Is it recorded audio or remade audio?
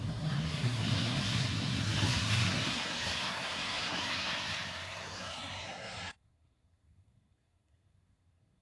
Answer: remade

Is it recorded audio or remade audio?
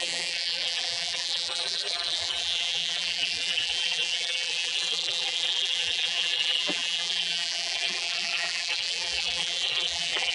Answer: remade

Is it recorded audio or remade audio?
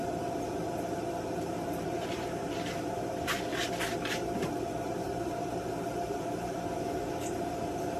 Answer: remade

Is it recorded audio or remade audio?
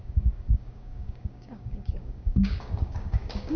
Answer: remade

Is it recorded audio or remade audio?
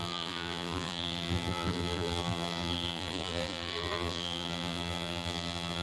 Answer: remade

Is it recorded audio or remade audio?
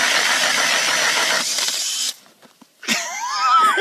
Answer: recorded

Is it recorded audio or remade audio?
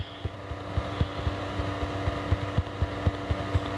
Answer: recorded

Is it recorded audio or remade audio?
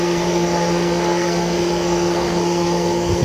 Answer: remade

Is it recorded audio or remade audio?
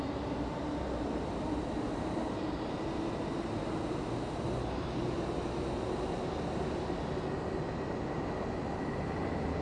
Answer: recorded